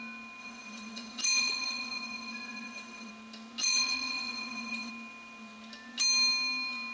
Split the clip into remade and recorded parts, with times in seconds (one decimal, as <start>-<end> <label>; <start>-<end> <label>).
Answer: 0.0-0.4 recorded; 0.4-3.1 remade; 3.1-3.6 recorded; 3.6-4.9 remade; 4.9-6.9 recorded

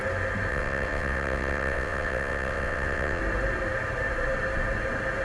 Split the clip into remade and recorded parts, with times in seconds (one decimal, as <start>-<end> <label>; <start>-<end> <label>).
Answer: 0.0-0.5 recorded; 0.5-3.2 remade; 3.2-5.2 recorded

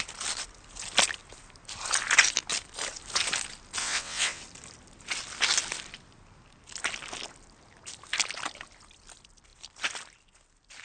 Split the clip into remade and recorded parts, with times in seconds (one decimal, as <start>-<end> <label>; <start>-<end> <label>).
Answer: 0.0-3.8 recorded; 3.8-4.4 remade; 4.4-10.8 recorded